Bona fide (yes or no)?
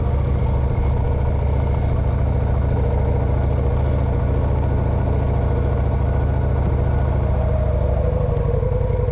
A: yes